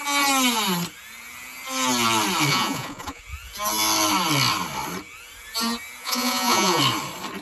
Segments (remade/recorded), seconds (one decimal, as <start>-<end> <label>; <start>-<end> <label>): 0.0-2.5 recorded; 2.5-3.2 remade; 3.2-6.0 recorded; 6.0-6.8 remade; 6.8-7.4 recorded